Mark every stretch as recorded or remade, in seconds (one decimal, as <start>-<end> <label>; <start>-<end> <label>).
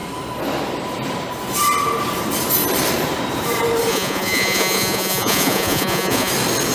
0.0-3.9 recorded; 3.9-6.3 remade; 6.3-6.7 recorded